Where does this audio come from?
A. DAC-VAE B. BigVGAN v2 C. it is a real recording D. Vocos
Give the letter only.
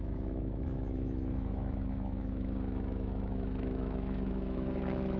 A